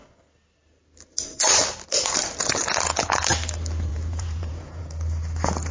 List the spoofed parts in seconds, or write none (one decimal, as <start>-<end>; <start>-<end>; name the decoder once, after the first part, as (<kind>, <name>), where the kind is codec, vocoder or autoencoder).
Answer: 3.9-4.8 (vocoder, Vocos)